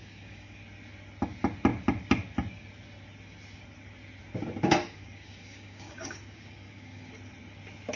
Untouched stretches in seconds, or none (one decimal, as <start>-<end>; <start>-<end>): 0.6-4.8; 7.1-8.0